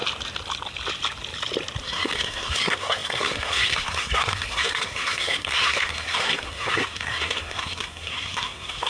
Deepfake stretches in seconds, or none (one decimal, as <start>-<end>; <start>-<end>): 1.8-8.9